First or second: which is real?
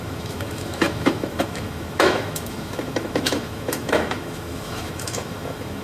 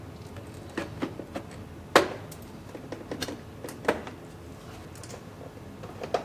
second